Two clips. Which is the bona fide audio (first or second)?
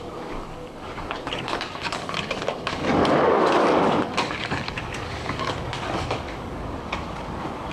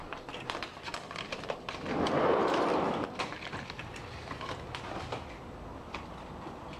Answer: second